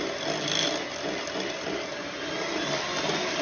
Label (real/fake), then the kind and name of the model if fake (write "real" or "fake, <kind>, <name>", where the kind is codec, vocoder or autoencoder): real